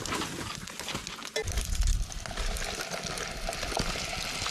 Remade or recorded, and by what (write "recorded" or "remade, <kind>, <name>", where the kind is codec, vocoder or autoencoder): recorded